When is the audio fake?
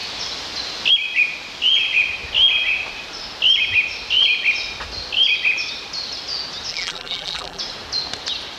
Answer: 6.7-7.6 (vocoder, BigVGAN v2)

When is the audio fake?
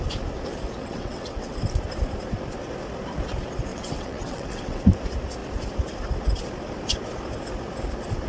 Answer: 0.8-1.6 (vocoder, WaveNeXt); 3.7-4.8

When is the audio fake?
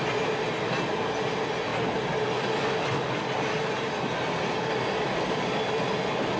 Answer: none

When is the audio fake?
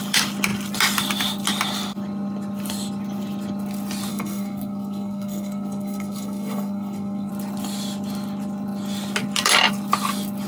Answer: 4.1-7.3 (codec, SNAC)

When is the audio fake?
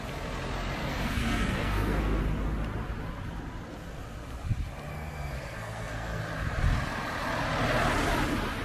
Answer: 0.8-2.2 (codec, SNAC); 4.9-6.2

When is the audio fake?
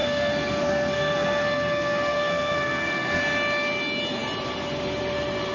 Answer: 0.0-3.2 (codec, SNAC)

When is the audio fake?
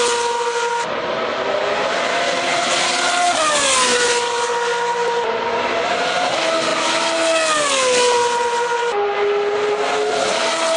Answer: none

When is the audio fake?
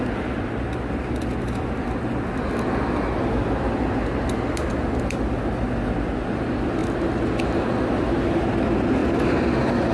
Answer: none